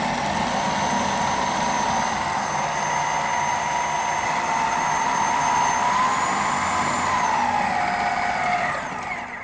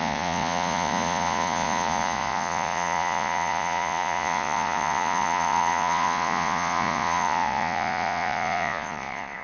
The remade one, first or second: second